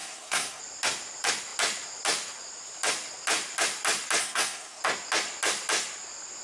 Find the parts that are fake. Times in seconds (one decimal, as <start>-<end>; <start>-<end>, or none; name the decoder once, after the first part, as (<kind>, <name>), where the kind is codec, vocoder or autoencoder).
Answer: 0.0-0.6 (codec, SNAC); 4.2-4.8